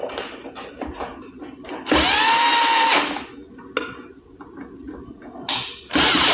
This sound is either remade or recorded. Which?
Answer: recorded